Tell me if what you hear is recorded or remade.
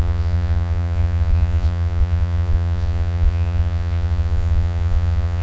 remade